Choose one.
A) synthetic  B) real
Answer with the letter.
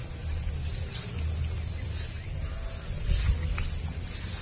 B